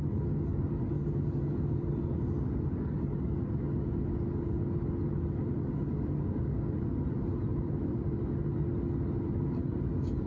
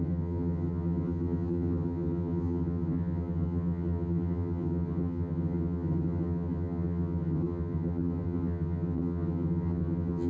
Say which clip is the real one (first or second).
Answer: first